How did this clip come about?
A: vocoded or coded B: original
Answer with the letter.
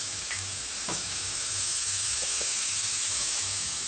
A